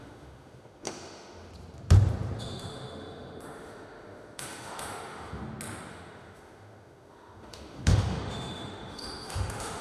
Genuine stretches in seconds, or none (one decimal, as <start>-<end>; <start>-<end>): 1.5-2.4; 5.4-5.9